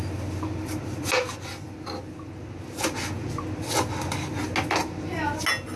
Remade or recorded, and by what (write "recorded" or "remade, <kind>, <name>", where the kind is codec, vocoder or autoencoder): recorded